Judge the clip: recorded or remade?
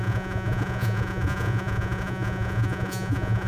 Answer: remade